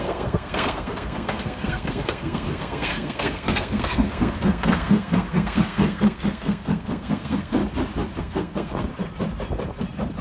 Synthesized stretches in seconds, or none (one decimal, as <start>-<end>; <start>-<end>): 0.0-7.6; 8.2-8.9